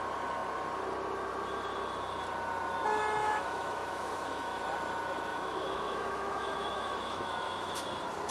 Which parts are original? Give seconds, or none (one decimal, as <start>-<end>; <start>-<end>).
0.0-3.2; 4.6-5.3; 7.8-8.3